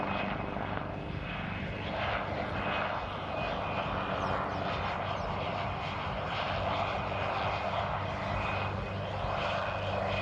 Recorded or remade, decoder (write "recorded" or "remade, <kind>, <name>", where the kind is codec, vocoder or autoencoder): recorded